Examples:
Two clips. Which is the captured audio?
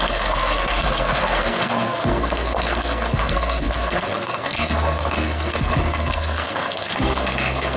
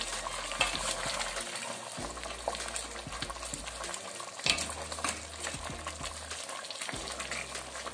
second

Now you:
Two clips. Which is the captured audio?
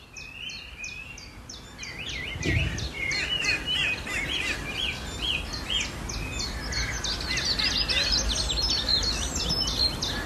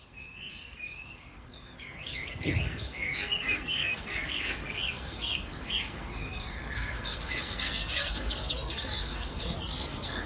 first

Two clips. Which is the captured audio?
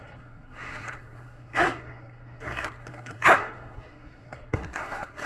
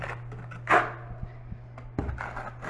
second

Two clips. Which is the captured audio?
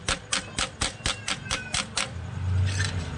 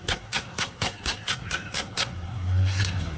first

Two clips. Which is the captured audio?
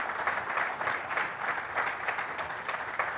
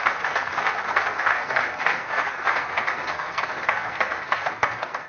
first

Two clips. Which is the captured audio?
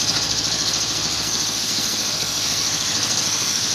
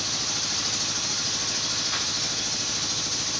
second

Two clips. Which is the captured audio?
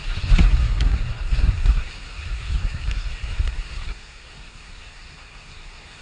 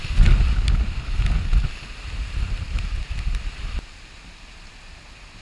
second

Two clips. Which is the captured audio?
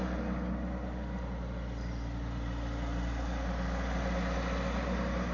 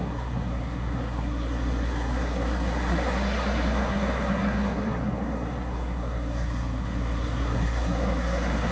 first